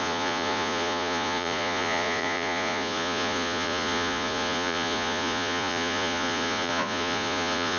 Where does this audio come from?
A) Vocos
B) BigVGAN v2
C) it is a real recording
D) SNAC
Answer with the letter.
A